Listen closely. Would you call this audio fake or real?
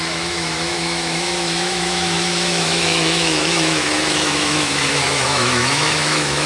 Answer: fake